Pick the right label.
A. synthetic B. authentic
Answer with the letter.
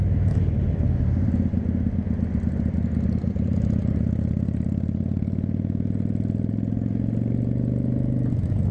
B